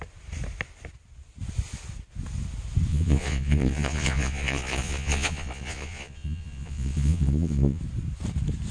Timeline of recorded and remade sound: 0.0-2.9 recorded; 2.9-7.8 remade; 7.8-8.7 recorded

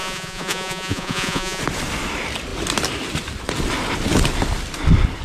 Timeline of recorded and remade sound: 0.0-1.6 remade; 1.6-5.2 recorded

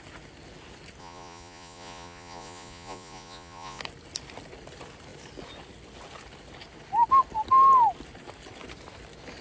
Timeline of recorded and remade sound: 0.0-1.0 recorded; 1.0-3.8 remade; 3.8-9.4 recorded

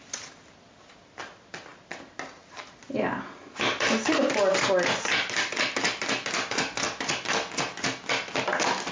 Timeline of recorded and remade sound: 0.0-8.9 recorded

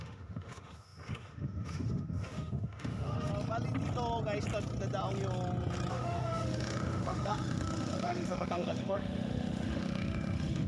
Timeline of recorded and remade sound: 0.0-3.3 remade; 3.3-5.9 recorded; 5.9-10.7 remade

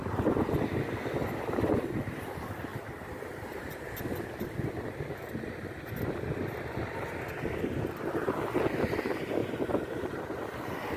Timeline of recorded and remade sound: 0.0-2.7 recorded; 2.7-4.0 remade; 4.0-9.4 recorded; 9.4-11.0 remade

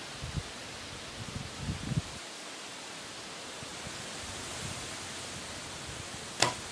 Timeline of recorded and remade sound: 0.0-1.1 recorded; 1.1-1.7 remade; 1.7-3.7 recorded; 3.7-4.8 remade; 4.8-6.7 recorded